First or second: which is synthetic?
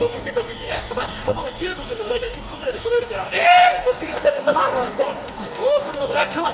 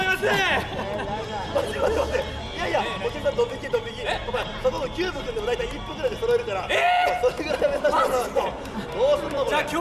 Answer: first